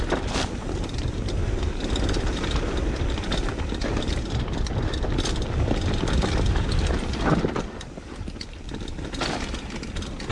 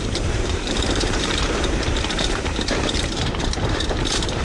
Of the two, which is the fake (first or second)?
second